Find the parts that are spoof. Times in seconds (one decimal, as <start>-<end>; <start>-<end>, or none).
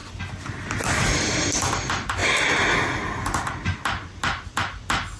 none